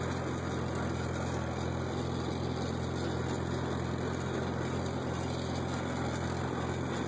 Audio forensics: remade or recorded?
recorded